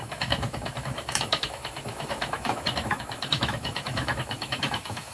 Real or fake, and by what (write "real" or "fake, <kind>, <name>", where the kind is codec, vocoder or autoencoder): fake, autoencoder, DAC-VAE